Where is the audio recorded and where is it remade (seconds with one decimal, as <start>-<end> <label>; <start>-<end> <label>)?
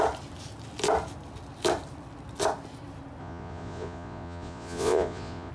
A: 0.0-3.2 recorded; 3.2-5.5 remade